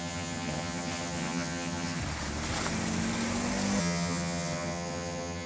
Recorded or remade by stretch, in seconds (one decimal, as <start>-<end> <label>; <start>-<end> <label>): 0.0-2.0 remade; 2.0-3.8 recorded; 3.8-5.5 remade